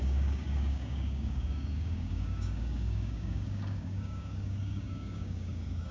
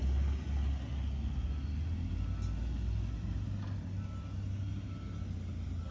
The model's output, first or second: first